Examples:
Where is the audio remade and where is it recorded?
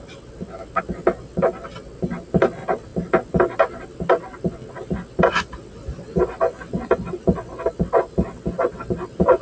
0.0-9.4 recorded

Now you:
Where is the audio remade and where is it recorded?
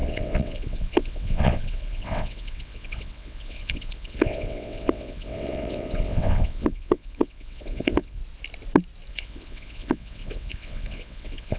0.0-8.2 remade; 8.2-9.1 recorded; 9.1-11.6 remade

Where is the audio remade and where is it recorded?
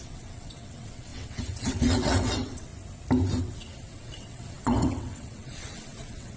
0.0-2.7 remade; 2.7-3.4 recorded; 3.4-6.4 remade